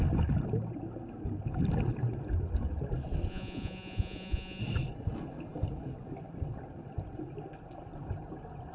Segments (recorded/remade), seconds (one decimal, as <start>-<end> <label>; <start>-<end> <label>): 0.0-3.3 recorded; 3.3-4.6 remade; 4.6-8.7 recorded